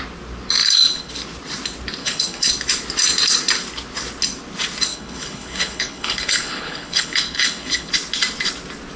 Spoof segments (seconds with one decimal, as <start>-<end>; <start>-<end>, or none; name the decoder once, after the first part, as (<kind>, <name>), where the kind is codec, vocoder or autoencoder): 0.6-1.1 (codec, HILCodec); 2.0-2.5; 4.9-7.9